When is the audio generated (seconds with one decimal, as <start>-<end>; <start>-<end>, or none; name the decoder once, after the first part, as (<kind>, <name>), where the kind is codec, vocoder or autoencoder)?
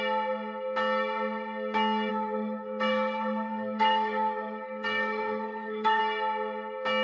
2.1-6.0 (codec, SNAC)